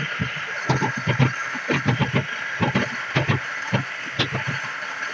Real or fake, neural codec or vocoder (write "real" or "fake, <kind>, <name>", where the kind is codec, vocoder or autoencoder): real